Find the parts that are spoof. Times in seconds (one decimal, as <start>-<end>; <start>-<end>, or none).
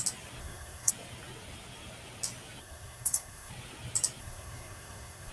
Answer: 0.4-0.9; 2.6-3.5; 4.2-5.3